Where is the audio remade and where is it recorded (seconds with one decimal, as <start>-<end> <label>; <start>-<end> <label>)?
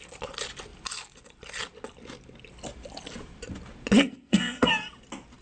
0.0-4.0 recorded; 4.0-4.7 remade; 4.7-5.4 recorded